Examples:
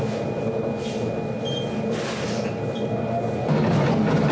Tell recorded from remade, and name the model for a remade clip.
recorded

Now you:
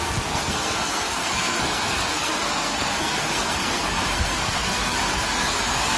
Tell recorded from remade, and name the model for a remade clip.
remade, codec, SNAC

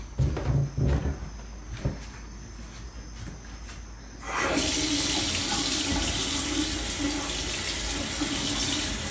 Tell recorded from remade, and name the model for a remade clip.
recorded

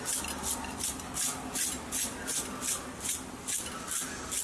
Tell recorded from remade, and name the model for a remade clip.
recorded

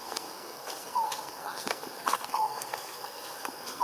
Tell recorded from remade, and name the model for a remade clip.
remade, codec, SNAC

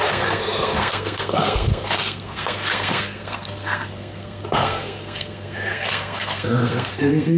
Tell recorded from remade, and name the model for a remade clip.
remade, codec, SNAC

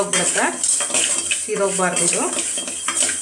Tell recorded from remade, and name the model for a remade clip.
recorded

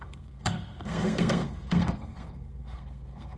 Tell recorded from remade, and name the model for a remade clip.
remade, codec, SNAC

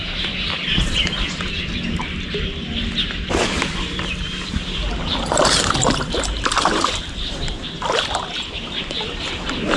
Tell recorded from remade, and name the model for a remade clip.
recorded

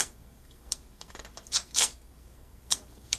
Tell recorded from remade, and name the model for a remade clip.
remade, codec, SNAC